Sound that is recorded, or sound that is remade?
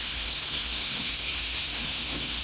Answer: remade